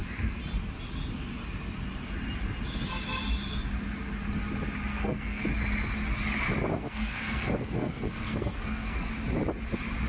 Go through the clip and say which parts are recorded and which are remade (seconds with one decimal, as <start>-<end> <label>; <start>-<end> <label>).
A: 0.0-4.9 recorded; 4.9-5.4 remade; 5.4-6.7 recorded; 6.7-9.1 remade; 9.1-10.1 recorded